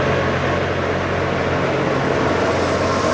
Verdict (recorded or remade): recorded